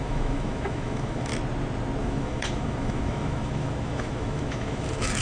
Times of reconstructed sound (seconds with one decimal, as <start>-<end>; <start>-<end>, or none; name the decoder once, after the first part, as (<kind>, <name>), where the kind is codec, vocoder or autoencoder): 0.0-1.3 (autoencoder, DAC-VAE); 2.0-5.2